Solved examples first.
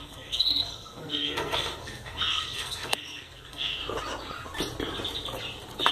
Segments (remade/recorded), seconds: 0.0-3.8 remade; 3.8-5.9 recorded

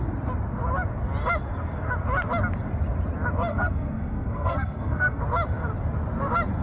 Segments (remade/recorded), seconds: 0.0-3.5 recorded; 3.5-5.2 remade; 5.2-6.6 recorded

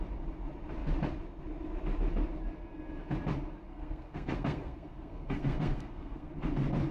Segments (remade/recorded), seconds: 0.0-3.7 recorded; 3.7-6.3 remade; 6.3-6.9 recorded

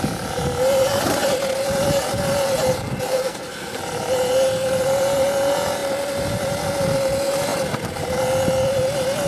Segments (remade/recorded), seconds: 0.0-3.1 recorded; 3.1-3.8 remade; 3.8-9.3 recorded

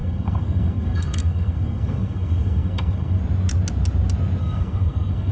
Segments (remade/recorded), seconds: 0.0-3.2 remade; 3.2-4.4 recorded; 4.4-5.3 remade